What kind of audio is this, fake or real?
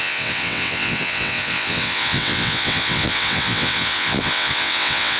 fake